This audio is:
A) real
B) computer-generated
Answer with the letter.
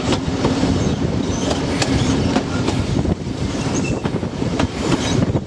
B